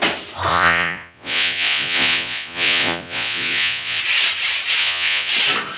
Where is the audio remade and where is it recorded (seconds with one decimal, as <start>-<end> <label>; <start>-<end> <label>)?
0.0-0.5 recorded; 0.5-4.0 remade; 4.0-4.8 recorded; 4.8-5.3 remade; 5.3-5.8 recorded